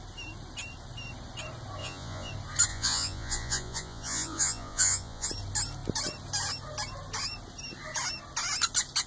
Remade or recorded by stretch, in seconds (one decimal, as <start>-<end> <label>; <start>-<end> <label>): 0.0-1.8 recorded; 1.8-2.3 remade; 2.3-2.7 recorded; 2.7-5.3 remade; 5.3-9.1 recorded